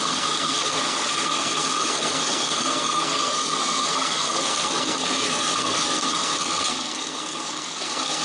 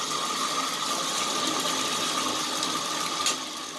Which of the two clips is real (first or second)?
second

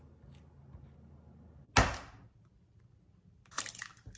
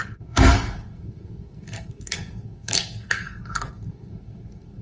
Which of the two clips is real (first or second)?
first